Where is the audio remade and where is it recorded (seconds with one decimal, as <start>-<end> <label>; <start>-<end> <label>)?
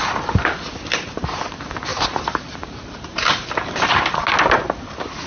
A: 0.0-1.9 recorded; 1.9-4.2 remade; 4.2-5.3 recorded